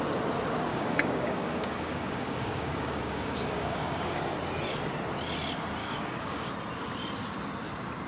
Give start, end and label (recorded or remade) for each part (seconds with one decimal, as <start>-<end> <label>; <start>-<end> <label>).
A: 0.0-0.7 recorded; 0.7-4.2 remade; 4.2-5.8 recorded; 5.8-6.5 remade; 6.5-8.1 recorded